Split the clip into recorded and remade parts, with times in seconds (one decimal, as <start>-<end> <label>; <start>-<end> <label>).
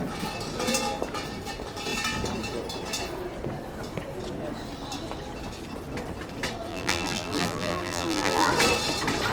0.0-6.7 recorded; 6.7-8.5 remade; 8.5-9.3 recorded